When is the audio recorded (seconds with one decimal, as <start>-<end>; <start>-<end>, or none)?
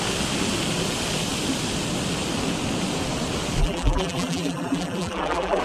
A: 0.0-3.6